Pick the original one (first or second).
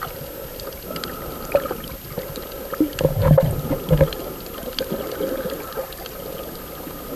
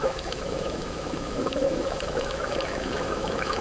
first